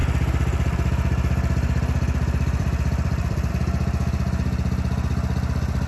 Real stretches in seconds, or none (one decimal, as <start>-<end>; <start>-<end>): 3.5-5.9